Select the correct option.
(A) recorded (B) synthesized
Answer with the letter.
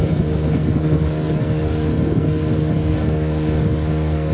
B